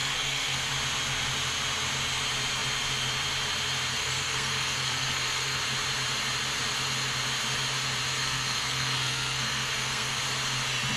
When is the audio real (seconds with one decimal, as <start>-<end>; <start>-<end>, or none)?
0.7-3.9; 5.6-8.2; 10.2-11.0